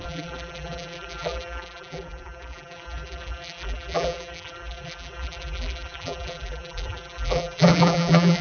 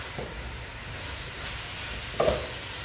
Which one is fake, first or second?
first